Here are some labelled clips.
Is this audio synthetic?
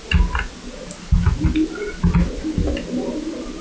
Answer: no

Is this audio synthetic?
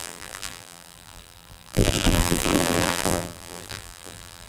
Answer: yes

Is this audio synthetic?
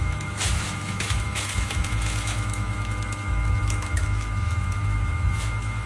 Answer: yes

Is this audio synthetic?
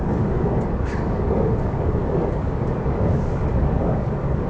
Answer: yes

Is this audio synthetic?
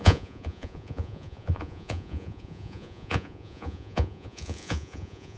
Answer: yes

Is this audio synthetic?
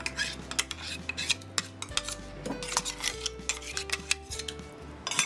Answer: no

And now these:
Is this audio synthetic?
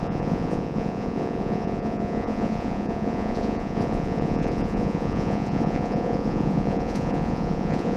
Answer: yes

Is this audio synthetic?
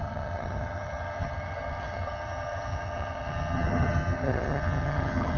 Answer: yes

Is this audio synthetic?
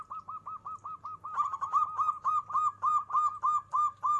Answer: no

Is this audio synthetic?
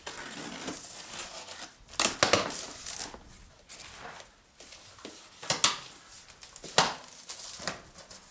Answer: no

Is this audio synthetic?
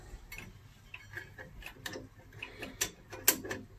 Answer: no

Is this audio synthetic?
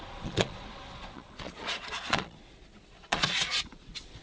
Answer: yes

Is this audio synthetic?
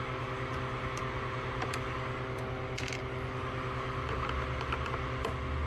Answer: no